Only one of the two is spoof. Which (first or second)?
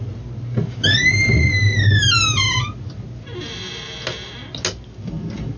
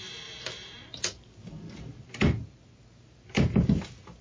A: second